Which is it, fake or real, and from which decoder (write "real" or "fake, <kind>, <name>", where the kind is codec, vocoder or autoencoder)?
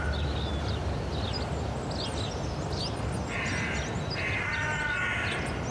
real